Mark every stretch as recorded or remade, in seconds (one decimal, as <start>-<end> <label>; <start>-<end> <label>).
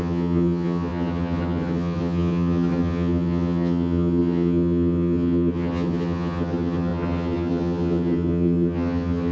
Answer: 0.0-9.3 remade